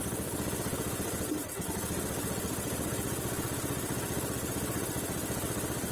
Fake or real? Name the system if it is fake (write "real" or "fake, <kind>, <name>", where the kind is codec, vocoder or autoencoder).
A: real